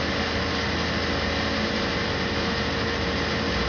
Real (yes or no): yes